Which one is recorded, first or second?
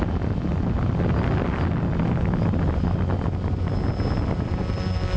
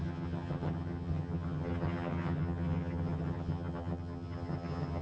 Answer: first